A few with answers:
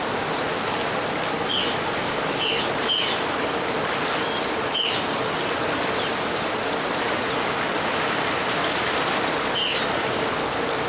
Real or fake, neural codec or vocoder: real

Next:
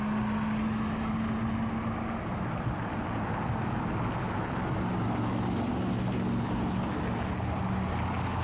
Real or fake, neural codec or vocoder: real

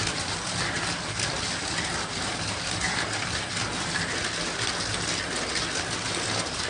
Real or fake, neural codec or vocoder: real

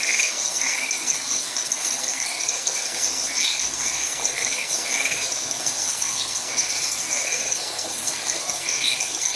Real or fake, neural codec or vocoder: fake, codec, SNAC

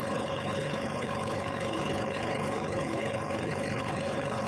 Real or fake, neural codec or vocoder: fake, codec, HILCodec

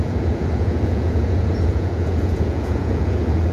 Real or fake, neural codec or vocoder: fake, vocoder, Vocos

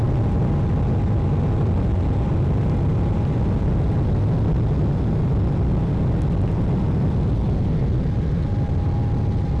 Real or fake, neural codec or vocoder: real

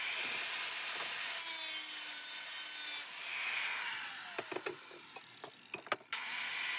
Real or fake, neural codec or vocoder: real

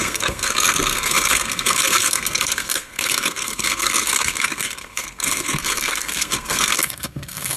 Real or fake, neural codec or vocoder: fake, codec, SNAC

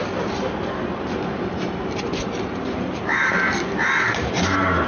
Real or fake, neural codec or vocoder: real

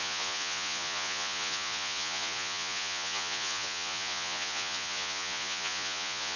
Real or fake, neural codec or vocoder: fake, vocoder, Vocos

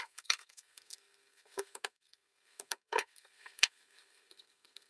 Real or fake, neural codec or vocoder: fake, codec, SNAC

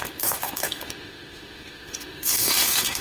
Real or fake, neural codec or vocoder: fake, autoencoder, DAC-VAE